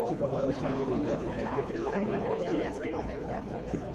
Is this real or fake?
fake